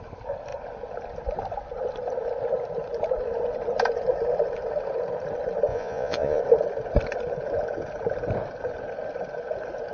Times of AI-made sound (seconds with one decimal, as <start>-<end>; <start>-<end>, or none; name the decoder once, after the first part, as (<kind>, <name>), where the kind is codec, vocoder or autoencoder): 5.7-6.4 (vocoder, Vocos)